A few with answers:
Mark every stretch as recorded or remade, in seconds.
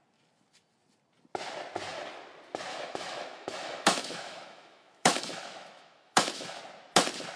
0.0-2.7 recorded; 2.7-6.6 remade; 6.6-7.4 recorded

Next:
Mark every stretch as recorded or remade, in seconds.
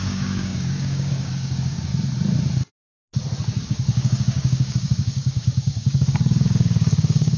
0.0-1.9 remade; 1.9-3.6 recorded; 3.6-7.4 remade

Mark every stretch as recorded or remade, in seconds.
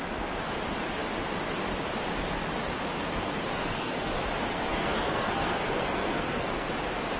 0.0-3.6 recorded; 3.6-4.1 remade; 4.1-4.5 recorded; 4.5-6.7 remade; 6.7-7.2 recorded